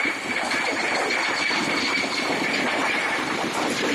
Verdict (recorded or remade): remade